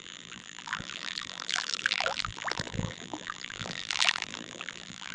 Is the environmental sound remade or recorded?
remade